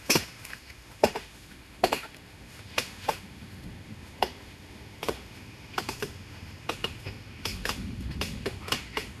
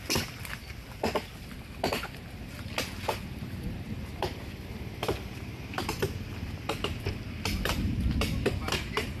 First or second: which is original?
second